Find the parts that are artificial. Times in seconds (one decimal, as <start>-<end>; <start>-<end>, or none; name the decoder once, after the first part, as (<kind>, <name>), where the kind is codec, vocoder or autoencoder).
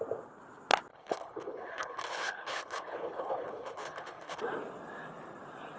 0.9-4.4 (codec, HILCodec)